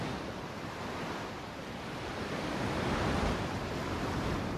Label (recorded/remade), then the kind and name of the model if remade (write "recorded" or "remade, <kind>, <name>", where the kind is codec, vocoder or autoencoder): remade, vocoder, BigVGAN v2